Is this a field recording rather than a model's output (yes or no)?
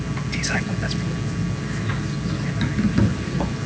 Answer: yes